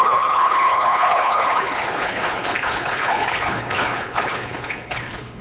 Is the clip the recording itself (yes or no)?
no